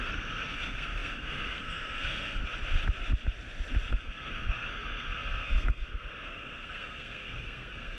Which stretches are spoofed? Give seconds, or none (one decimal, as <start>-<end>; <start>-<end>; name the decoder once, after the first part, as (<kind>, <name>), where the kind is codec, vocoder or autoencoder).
0.0-2.4 (codec, SNAC); 3.9-8.0